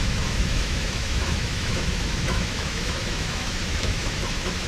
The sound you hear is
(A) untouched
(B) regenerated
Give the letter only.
B